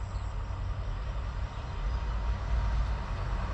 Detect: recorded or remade recorded